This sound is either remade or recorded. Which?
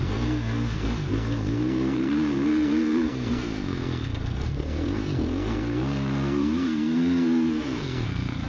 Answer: remade